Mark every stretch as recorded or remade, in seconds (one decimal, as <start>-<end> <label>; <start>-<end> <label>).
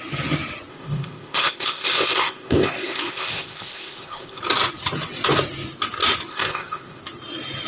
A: 0.0-0.7 recorded; 0.7-4.4 remade; 4.4-6.3 recorded; 6.3-7.0 remade; 7.0-7.7 recorded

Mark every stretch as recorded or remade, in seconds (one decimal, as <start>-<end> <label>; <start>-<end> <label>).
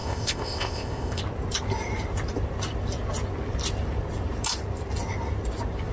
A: 0.0-1.2 remade; 1.2-5.9 recorded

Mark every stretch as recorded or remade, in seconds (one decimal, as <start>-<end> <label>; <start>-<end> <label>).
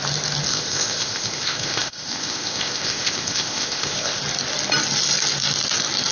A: 0.0-0.5 recorded; 0.5-4.2 remade; 4.2-6.1 recorded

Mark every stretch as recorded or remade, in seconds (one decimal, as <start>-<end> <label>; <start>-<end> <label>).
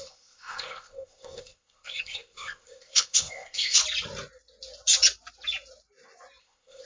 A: 0.0-3.8 remade; 3.8-6.4 recorded; 6.4-6.9 remade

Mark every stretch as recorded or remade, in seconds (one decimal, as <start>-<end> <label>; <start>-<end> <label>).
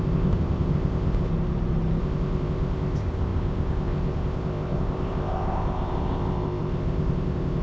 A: 0.0-1.3 remade; 1.3-2.0 recorded; 2.0-7.6 remade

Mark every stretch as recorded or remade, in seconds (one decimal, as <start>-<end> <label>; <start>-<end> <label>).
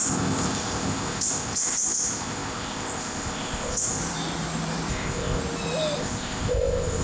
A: 0.0-4.0 remade; 4.0-4.9 recorded; 4.9-5.4 remade; 5.4-6.0 recorded; 6.0-7.0 remade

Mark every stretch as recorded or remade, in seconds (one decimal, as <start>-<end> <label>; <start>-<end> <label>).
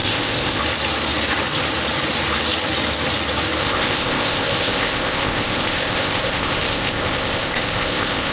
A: 0.0-0.6 remade; 0.6-3.6 recorded; 3.6-8.3 remade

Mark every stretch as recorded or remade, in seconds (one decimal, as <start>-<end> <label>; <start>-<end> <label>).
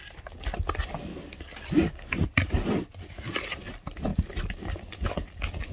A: 0.0-5.7 recorded